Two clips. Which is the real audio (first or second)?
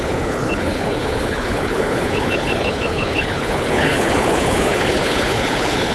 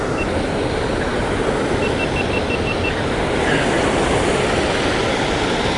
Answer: second